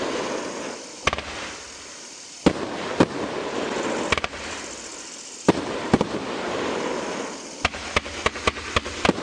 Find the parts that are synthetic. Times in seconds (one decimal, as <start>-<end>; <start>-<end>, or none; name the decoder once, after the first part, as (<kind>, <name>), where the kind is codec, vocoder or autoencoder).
4.9-7.0 (vocoder, BigVGAN v2)